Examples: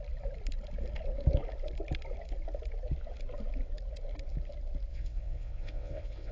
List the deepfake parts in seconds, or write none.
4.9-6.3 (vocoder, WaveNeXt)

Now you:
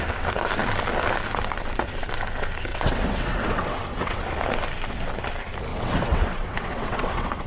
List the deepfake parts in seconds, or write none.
2.7-4.2 (vocoder, WaveNeXt); 5.7-7.5

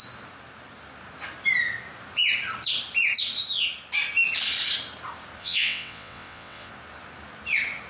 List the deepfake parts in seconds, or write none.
5.4-6.7 (vocoder, WaveNeXt)

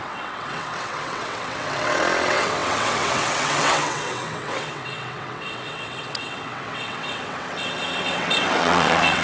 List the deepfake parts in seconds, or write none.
0.0-9.2 (vocoder, WaveNeXt)

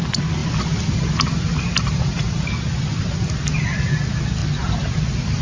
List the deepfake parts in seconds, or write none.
none

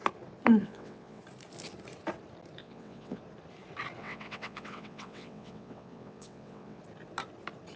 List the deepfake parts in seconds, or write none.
0.6-1.2 (vocoder, WaveNeXt); 2.6-3.2; 4.0-6.8

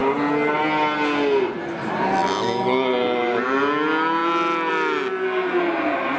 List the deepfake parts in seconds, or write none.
none